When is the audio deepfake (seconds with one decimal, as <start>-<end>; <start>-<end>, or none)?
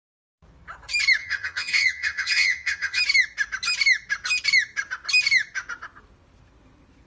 1.2-3.0